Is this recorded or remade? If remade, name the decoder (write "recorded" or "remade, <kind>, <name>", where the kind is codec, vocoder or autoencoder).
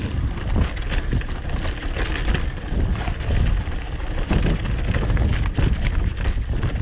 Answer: recorded